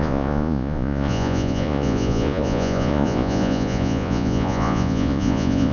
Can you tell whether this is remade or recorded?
remade